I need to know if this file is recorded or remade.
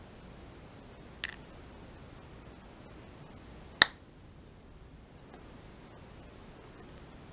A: recorded